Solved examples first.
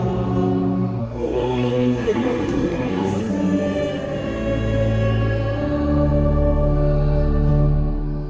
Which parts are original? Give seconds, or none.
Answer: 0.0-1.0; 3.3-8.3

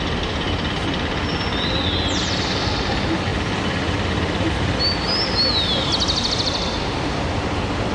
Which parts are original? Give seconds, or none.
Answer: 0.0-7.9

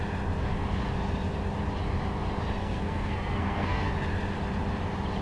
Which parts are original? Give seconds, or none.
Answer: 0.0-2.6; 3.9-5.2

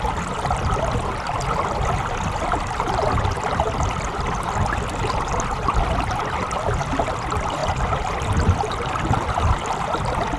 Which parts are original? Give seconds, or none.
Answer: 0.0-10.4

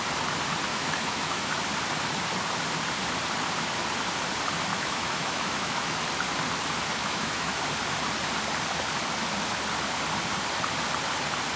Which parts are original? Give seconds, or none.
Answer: 0.0-0.7; 1.5-4.7; 6.0-7.0; 7.6-11.6